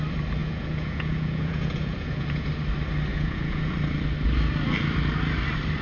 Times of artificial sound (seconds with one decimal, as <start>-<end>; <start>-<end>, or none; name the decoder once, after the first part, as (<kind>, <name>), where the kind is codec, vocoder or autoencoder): 0.4-2.5 (vocoder, Vocos); 3.1-3.7